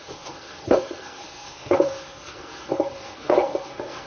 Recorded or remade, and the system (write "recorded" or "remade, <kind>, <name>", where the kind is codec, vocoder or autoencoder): remade, codec, SNAC